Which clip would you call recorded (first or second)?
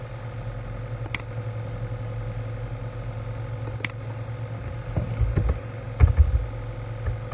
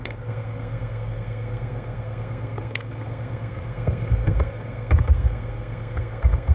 first